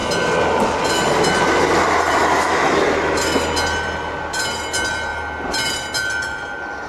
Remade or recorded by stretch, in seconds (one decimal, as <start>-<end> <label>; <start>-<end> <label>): 0.0-2.2 recorded; 2.2-3.2 remade; 3.2-6.9 recorded